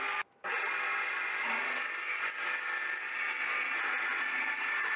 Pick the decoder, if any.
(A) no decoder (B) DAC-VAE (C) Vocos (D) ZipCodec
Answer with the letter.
A